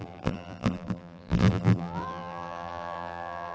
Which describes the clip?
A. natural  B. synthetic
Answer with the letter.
B